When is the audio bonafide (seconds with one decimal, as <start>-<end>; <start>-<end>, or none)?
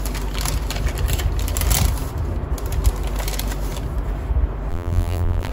0.0-4.7